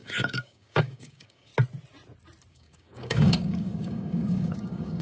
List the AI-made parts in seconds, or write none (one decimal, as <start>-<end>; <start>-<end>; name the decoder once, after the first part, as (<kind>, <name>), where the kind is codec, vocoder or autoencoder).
0.0-1.5 (codec, DAC); 2.5-5.0